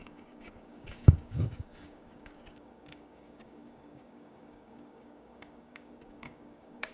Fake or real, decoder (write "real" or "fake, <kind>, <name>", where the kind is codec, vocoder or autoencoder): fake, codec, DAC